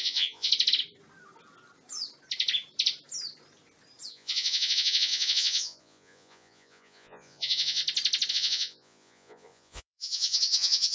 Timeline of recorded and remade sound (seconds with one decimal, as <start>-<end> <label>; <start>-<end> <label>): 0.0-0.5 remade; 0.5-4.1 recorded; 4.1-7.8 remade; 7.8-8.3 recorded; 8.3-10.9 remade